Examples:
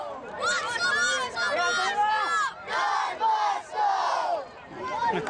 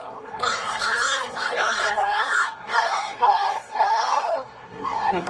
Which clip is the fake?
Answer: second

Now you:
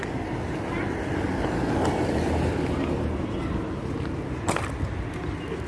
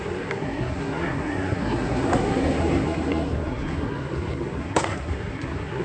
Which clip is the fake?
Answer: second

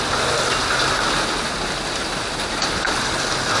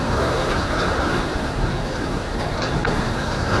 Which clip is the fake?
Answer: second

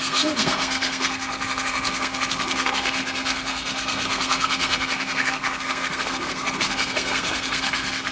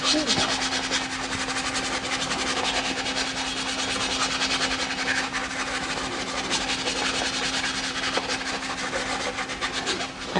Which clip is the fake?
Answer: first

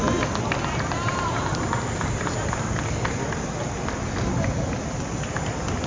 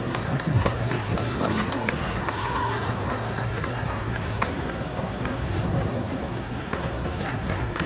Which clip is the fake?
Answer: second